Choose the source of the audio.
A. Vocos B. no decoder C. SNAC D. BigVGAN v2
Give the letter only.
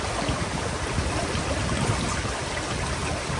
B